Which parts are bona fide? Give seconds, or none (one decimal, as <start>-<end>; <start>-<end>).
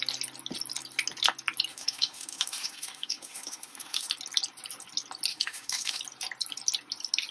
0.0-1.7; 4.1-5.3; 6.0-7.3